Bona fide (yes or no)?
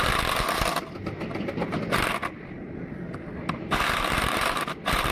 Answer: yes